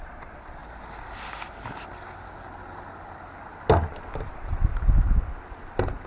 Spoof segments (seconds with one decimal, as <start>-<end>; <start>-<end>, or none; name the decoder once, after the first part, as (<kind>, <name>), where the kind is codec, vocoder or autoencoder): 0.0-0.6 (vocoder, Vocos); 4.3-4.7